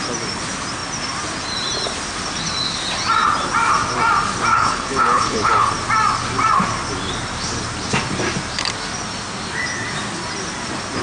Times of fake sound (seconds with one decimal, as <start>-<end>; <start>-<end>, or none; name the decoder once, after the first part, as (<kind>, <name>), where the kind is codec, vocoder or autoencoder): 4.5-5.7 (codec, HILCodec)